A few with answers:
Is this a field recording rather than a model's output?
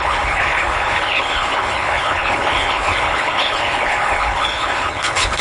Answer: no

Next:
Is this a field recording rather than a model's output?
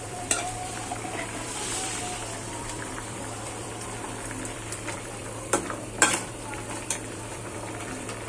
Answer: no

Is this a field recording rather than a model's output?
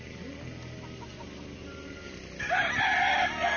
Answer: yes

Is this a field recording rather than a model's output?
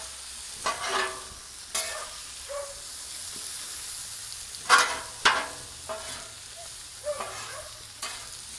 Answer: yes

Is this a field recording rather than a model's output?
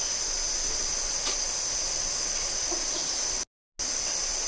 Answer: yes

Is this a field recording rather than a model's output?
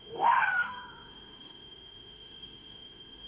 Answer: no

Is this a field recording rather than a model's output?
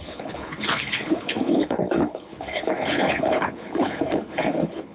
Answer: no